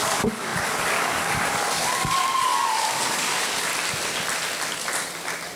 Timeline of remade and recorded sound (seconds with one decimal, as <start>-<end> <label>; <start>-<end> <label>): 0.0-3.7 remade; 3.7-5.6 recorded